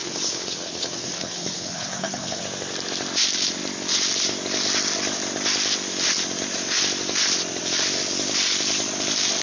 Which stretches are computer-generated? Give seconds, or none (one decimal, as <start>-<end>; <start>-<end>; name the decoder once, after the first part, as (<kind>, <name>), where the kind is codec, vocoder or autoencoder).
0.0-2.4 (codec, HILCodec)